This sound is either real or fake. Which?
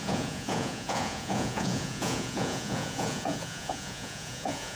fake